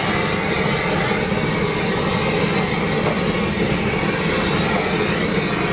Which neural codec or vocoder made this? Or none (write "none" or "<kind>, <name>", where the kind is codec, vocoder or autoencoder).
none